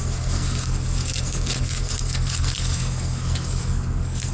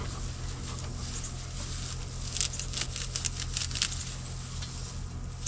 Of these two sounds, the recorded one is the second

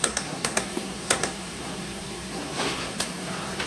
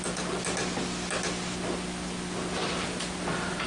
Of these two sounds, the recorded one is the second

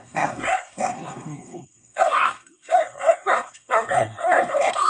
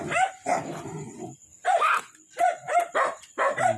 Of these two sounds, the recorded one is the second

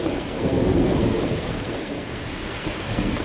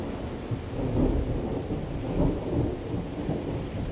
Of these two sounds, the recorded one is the second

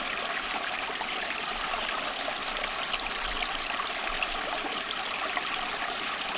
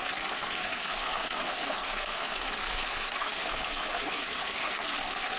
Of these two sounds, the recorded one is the first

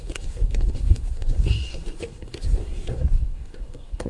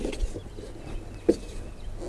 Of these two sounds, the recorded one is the second